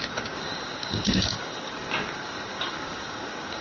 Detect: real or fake fake